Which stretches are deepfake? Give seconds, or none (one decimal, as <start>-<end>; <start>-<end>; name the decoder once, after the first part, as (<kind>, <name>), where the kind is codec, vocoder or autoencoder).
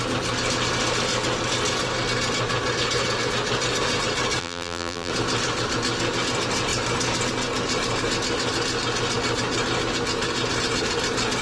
4.4-5.1 (vocoder, BigVGAN v2)